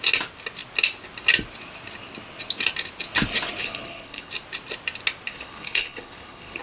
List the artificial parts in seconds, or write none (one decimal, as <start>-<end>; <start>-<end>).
3.6-4.3; 5.3-6.6

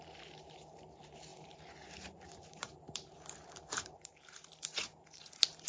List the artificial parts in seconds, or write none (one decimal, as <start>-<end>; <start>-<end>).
0.0-5.7

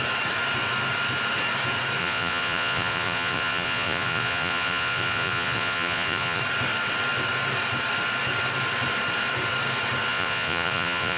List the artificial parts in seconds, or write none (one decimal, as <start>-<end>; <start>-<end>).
2.0-6.4; 10.1-11.2

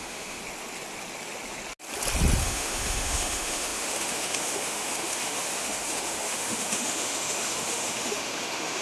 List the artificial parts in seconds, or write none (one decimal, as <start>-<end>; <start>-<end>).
0.0-0.4; 2.4-8.8